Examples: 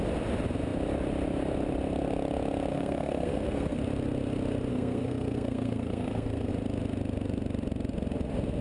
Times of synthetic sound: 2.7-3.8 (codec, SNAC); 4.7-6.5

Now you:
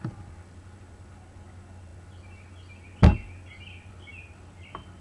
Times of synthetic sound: none

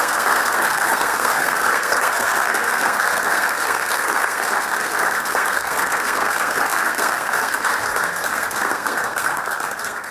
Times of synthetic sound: 0.0-10.1 (codec, SNAC)

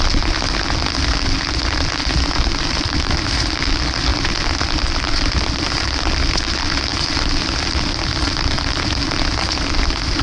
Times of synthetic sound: none

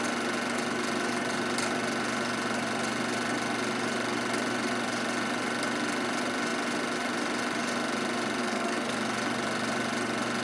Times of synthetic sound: 8.4-8.9 (codec, SNAC)

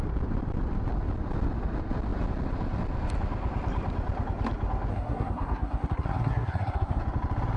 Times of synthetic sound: 4.9-7.0 (codec, SNAC)

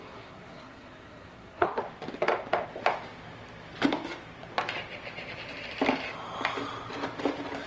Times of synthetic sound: 0.0-1.8 (codec, SNAC)

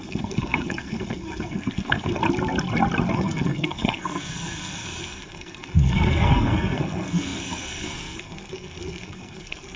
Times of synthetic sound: 0.0-2.2 (codec, SNAC); 3.1-9.8